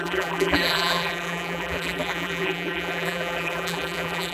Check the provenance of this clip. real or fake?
fake